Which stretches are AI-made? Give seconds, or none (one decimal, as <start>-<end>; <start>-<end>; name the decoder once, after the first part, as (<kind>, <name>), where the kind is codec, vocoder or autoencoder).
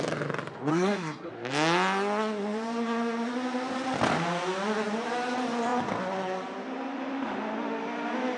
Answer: 0.7-1.3 (codec, SNAC)